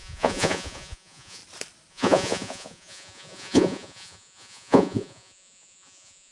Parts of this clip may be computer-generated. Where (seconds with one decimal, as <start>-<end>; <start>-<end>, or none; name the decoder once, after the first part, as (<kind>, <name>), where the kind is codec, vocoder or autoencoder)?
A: 0.0-1.4 (vocoder, Vocos); 1.9-6.3